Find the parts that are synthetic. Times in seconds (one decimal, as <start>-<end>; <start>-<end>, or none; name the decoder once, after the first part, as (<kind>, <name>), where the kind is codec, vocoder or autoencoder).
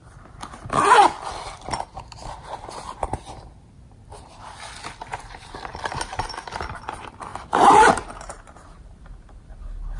5.1-6.5 (vocoder, BigVGAN v2); 7.3-9.4